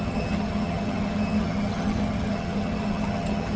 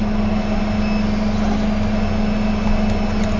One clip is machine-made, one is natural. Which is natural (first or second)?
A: second